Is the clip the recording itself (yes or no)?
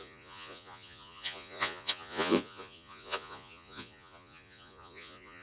no